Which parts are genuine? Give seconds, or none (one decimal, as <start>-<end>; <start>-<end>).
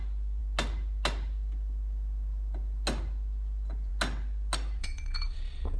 0.0-4.8